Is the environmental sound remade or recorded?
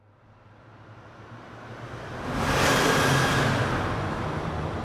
recorded